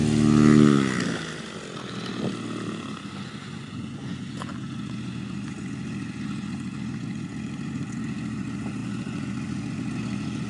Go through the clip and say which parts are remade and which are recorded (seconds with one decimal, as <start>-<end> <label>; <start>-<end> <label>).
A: 0.0-3.2 recorded; 3.2-10.5 remade